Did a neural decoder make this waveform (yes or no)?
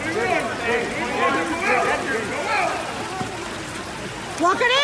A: no